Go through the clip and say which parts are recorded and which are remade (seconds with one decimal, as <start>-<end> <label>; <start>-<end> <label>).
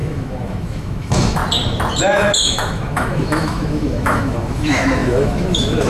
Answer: 0.0-1.4 remade; 1.4-2.0 recorded; 2.0-5.9 remade